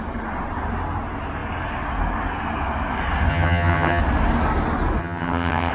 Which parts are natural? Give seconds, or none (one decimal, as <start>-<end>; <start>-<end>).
0.0-3.3; 4.0-5.0